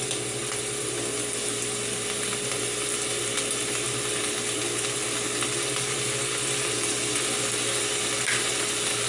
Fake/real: real